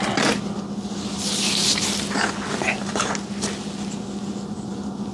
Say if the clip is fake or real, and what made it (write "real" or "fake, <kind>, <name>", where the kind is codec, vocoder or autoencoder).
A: real